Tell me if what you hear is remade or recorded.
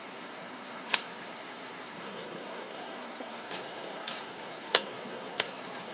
remade